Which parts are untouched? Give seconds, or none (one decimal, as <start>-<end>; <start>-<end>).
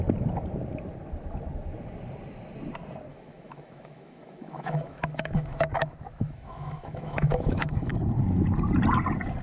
0.0-3.1; 7.9-9.4